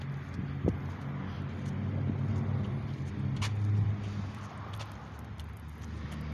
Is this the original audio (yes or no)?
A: yes